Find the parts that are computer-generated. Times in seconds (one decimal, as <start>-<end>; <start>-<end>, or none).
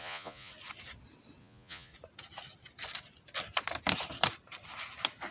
0.0-0.5; 1.4-1.9